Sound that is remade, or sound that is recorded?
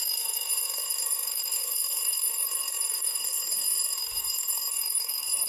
remade